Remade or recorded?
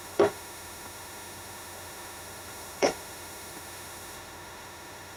remade